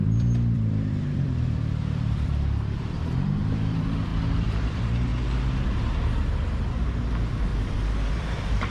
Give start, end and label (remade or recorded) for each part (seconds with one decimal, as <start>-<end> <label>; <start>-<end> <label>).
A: 0.0-5.1 remade; 5.1-6.6 recorded; 6.6-7.5 remade; 7.5-8.1 recorded; 8.1-8.7 remade